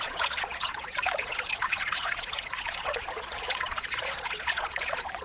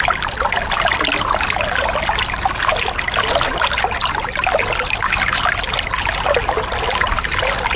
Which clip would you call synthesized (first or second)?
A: first